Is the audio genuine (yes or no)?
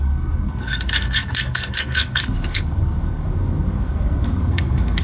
no